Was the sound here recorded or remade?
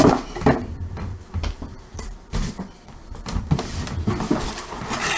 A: remade